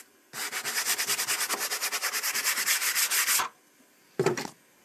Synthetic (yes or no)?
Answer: no